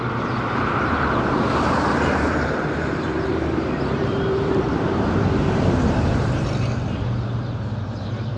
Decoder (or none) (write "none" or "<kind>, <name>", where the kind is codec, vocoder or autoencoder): vocoder, BigVGAN v2